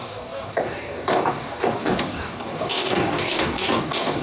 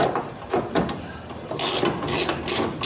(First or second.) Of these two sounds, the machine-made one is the first